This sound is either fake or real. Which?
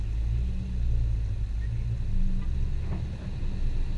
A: real